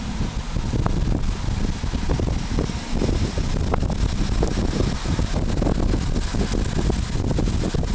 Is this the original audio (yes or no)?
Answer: yes